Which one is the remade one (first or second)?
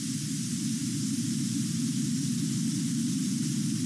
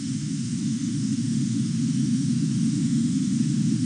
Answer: second